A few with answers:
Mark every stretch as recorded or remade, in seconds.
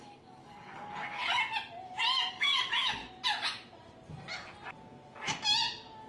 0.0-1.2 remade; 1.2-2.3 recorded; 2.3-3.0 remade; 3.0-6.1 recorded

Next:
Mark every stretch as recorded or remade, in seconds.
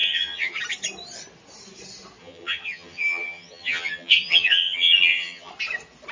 0.0-0.6 remade; 0.6-2.2 recorded; 2.2-5.5 remade; 5.5-6.1 recorded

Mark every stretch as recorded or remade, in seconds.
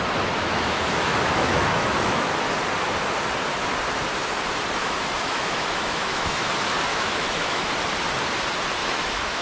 0.0-0.4 recorded; 0.4-2.3 remade; 2.3-4.8 recorded; 4.8-6.5 remade; 6.5-6.9 recorded; 6.9-7.7 remade; 7.7-8.8 recorded; 8.8-9.4 remade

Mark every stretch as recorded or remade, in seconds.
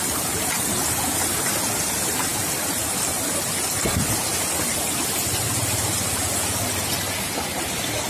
0.0-8.1 recorded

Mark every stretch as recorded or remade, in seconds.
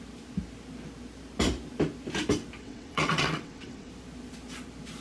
0.0-2.6 recorded; 2.6-3.9 remade; 3.9-5.0 recorded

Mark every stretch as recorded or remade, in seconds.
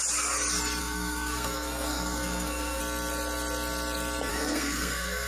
0.0-0.8 recorded; 0.8-2.8 remade; 2.8-4.3 recorded; 4.3-5.3 remade